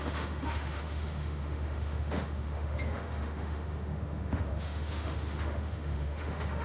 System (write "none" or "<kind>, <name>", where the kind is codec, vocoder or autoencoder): autoencoder, DAC-VAE